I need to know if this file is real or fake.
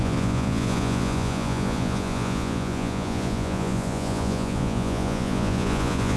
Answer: fake